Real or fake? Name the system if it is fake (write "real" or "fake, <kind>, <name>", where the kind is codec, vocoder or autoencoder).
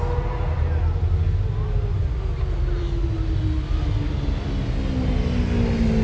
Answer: real